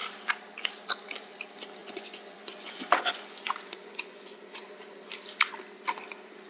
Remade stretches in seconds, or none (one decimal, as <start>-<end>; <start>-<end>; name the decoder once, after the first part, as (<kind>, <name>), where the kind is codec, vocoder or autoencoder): 1.8-4.6 (vocoder, Vocos)

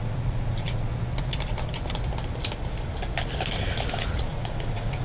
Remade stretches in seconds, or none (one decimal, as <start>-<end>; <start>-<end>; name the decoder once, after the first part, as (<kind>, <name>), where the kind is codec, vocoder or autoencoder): 0.0-0.9 (vocoder, Vocos); 3.9-5.0

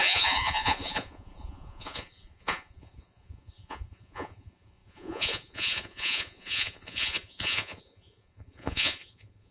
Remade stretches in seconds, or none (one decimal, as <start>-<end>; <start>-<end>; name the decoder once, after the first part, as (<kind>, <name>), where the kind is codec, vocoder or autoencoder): 0.0-9.5 (vocoder, Vocos)

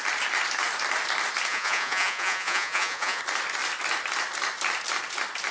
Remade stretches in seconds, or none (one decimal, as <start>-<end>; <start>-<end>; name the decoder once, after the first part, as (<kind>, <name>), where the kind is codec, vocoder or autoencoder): 1.5-3.2 (vocoder, Vocos)